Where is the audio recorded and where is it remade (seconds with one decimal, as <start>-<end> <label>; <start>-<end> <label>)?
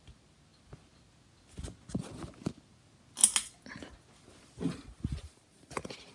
0.0-6.1 recorded